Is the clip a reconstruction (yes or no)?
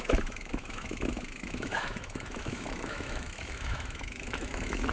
yes